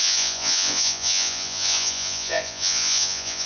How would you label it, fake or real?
fake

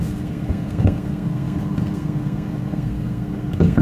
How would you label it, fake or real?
fake